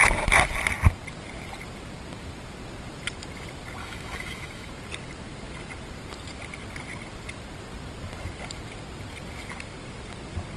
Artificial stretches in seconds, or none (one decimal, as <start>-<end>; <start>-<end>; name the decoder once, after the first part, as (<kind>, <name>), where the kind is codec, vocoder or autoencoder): 3.8-4.7 (autoencoder, DAC-VAE)